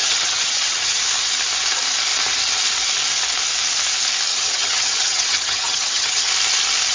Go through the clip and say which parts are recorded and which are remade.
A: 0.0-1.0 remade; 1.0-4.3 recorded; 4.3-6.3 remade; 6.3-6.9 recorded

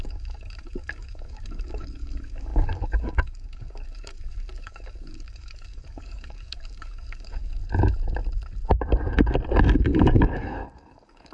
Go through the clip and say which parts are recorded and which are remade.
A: 0.0-7.6 remade; 7.6-10.0 recorded; 10.0-11.3 remade

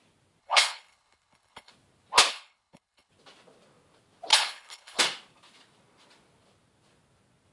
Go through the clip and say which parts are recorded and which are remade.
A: 0.0-0.4 recorded; 0.4-1.7 remade; 1.7-2.3 recorded; 2.3-3.1 remade; 3.1-4.3 recorded; 4.3-5.0 remade; 5.0-7.5 recorded

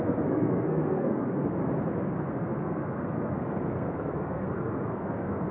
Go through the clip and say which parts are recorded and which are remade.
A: 0.0-1.6 remade; 1.6-2.3 recorded; 2.3-5.5 remade

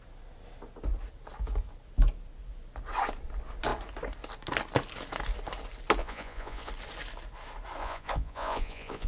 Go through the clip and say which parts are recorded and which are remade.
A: 0.0-6.0 recorded; 6.0-6.7 remade; 6.7-7.8 recorded; 7.8-9.1 remade